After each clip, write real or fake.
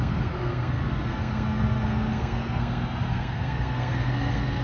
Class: fake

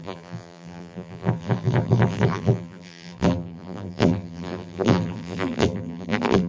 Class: fake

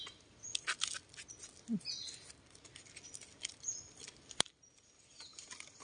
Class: real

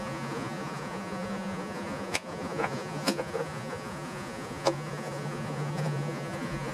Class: fake